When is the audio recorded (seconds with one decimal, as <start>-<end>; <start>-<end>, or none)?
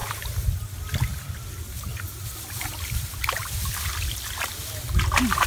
0.0-5.5